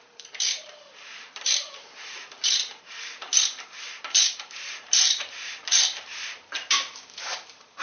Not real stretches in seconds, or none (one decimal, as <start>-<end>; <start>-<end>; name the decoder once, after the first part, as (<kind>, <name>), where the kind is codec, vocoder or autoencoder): 0.0-3.3 (vocoder, BigVGAN v2); 4.2-7.8